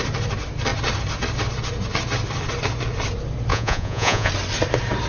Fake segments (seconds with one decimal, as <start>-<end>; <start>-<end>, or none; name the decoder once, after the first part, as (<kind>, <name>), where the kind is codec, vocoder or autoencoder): 3.5-4.3 (vocoder, Vocos)